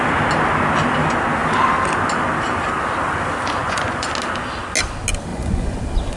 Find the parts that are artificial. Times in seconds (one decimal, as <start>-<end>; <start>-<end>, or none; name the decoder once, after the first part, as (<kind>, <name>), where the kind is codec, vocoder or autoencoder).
3.6-4.1 (vocoder, Vocos); 5.3-5.8